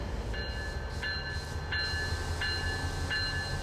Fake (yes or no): no